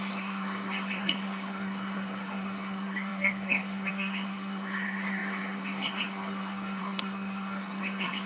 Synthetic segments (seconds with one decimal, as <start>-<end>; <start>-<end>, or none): 0.0-8.3